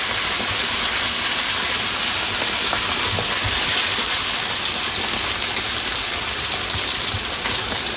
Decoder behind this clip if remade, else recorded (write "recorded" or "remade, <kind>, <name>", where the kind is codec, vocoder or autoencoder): recorded